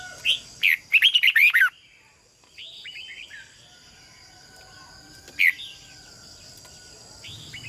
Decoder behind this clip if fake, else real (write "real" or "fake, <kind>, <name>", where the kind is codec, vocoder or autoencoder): real